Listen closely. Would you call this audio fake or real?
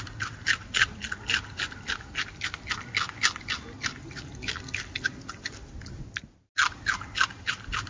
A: real